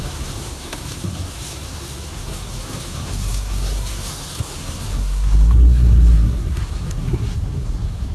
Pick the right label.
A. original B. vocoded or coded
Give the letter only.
B